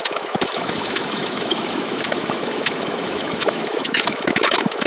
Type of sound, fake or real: fake